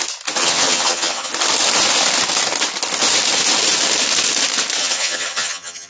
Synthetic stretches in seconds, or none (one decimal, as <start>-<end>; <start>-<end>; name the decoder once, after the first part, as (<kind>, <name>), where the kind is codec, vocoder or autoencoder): 0.4-1.3 (vocoder, HiFi-GAN); 4.8-5.9

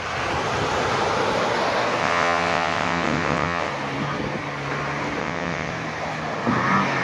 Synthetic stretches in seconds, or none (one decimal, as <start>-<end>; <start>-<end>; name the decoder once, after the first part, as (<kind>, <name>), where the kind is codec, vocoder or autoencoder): 2.0-3.7 (vocoder, WaveNeXt); 5.2-5.7

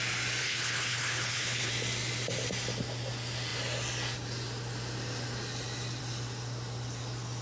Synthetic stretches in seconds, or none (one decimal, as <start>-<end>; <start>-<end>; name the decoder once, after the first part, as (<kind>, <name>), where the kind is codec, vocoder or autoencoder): 0.4-1.7 (codec, HILCodec)

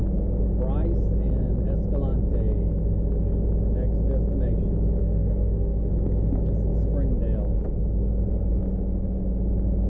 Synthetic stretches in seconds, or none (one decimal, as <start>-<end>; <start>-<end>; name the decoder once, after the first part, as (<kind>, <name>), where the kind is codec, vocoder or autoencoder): 5.0-5.9 (codec, SNAC)